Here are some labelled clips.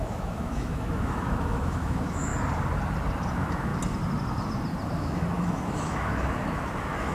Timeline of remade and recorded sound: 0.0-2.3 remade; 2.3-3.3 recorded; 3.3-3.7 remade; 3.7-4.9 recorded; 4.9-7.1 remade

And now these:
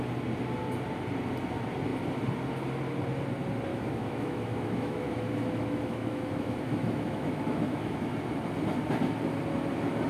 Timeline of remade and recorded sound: 0.0-3.7 recorded; 3.7-8.1 remade; 8.1-10.1 recorded

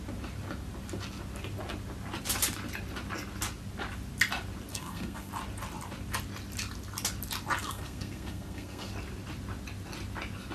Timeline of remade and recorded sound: 0.0-4.7 recorded; 4.7-5.3 remade; 5.3-7.6 recorded; 7.6-8.9 remade; 8.9-10.5 recorded

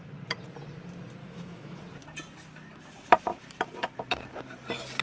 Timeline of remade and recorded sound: 0.0-1.2 recorded; 1.2-1.8 remade; 1.8-5.0 recorded

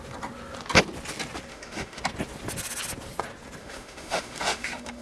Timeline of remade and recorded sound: 0.0-1.5 recorded; 1.5-2.0 remade; 2.0-3.6 recorded; 3.6-5.0 remade

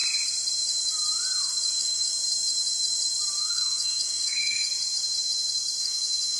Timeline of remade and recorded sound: 0.0-1.8 recorded; 1.8-2.2 remade; 2.2-3.4 recorded; 3.4-4.7 remade; 4.7-5.8 recorded; 5.8-6.4 remade

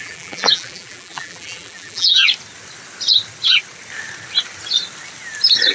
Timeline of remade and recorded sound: 0.0-2.2 remade; 2.2-5.7 recorded

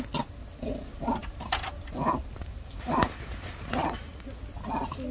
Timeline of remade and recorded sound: 0.0-5.1 recorded